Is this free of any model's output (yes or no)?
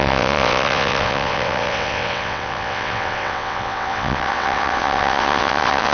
no